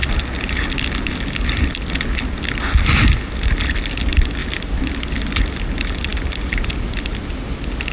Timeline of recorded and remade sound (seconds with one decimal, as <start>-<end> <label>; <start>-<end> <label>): 0.0-4.4 recorded; 4.4-4.9 remade; 4.9-7.9 recorded